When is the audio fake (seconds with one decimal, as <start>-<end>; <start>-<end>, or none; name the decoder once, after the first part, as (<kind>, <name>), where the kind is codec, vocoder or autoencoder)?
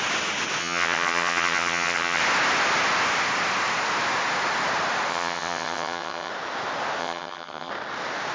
0.6-2.2 (vocoder, HiFi-GAN); 5.1-6.3; 7.0-7.7